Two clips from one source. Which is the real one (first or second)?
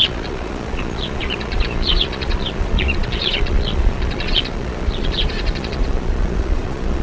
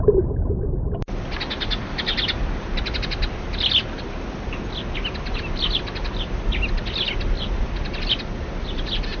second